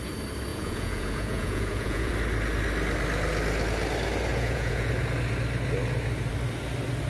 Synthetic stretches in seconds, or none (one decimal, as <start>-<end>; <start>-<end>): 0.5-2.1; 4.3-4.9